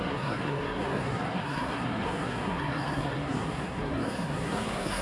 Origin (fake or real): fake